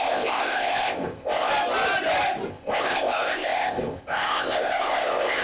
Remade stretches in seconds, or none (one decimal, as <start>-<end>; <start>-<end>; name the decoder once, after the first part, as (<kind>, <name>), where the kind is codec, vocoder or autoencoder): 0.0-1.5 (codec, ZipCodec); 2.5-5.4